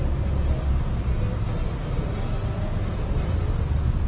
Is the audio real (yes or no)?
yes